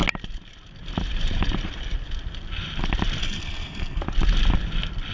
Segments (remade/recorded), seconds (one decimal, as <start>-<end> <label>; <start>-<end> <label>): 0.0-3.2 recorded; 3.2-4.0 remade; 4.0-5.1 recorded